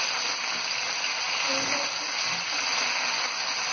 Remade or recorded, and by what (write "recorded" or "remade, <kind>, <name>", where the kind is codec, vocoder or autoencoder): recorded